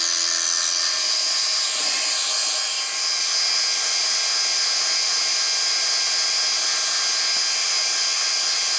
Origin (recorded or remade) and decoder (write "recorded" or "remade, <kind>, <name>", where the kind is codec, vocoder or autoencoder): recorded